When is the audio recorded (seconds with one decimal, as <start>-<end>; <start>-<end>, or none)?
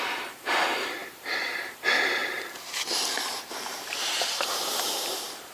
none